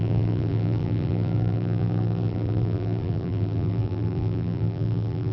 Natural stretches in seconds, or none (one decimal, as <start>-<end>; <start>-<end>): none